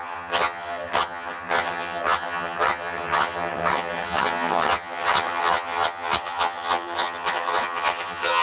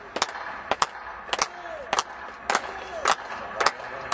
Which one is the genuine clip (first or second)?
second